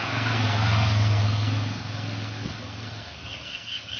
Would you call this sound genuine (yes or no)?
no